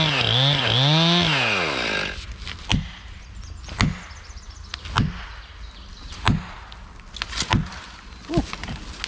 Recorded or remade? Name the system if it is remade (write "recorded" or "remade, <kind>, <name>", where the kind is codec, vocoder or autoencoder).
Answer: recorded